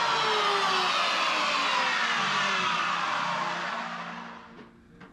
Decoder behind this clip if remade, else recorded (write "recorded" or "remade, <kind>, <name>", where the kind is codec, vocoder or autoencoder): recorded